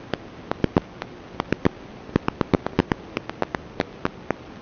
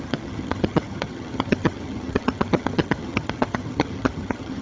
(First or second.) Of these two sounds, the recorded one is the first